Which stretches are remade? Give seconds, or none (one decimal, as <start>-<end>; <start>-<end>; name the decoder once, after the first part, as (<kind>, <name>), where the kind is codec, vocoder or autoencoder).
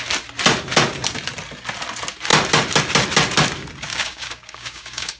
3.9-5.2 (codec, DAC)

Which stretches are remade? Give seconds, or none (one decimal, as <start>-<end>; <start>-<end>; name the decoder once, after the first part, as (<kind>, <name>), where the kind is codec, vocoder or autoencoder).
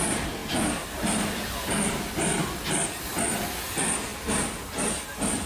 none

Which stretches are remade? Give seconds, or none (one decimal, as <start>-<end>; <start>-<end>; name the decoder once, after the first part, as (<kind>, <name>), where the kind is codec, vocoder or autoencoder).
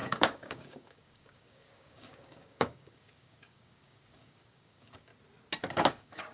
0.0-5.1 (codec, DAC); 5.7-6.3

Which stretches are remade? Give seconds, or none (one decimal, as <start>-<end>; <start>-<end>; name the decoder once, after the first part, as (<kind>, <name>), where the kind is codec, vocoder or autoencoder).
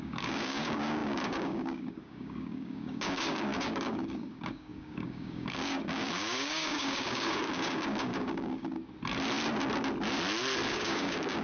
0.0-8.8 (codec, DAC); 10.7-11.4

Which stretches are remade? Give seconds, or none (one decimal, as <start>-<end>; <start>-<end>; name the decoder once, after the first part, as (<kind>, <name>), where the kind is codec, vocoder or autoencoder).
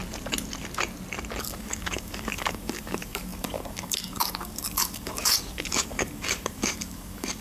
1.4-7.4 (codec, DAC)